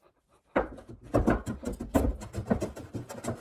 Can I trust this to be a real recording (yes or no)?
yes